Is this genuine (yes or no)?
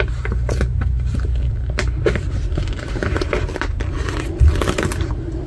no